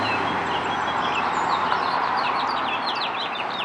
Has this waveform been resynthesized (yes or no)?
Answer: yes